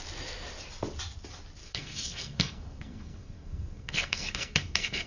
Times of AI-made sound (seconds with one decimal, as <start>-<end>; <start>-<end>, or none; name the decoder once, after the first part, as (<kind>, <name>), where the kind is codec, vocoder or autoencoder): 1.6-5.1 (codec, SNAC)